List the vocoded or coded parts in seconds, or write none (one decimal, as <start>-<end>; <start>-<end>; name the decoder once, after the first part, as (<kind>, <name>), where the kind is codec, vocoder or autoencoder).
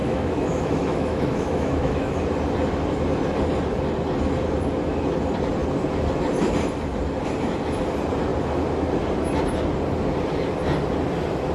0.0-2.2 (autoencoder, DAC-VAE)